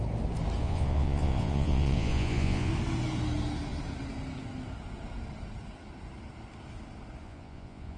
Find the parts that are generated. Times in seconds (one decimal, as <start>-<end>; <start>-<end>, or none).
0.6-2.7; 7.2-8.0